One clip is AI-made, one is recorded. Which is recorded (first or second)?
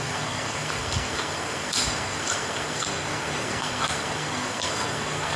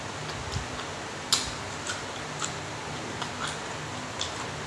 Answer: second